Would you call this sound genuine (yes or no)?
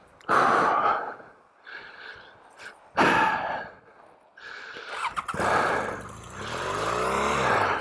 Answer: yes